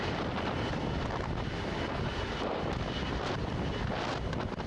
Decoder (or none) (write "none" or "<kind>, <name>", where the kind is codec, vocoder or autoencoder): none